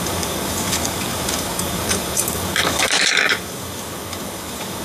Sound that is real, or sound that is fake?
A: fake